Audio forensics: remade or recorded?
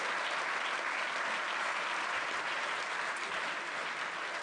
recorded